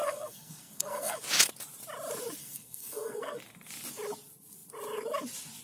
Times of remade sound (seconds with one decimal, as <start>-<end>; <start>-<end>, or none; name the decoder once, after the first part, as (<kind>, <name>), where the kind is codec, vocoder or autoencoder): 0.0-1.2 (codec, SNAC); 2.4-3.4